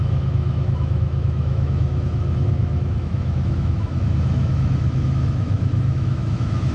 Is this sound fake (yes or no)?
yes